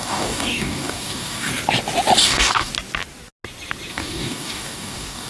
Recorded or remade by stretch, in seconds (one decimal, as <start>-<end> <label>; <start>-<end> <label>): 0.0-1.5 remade; 1.5-2.2 recorded; 2.2-2.7 remade; 2.7-3.9 recorded; 3.9-5.3 remade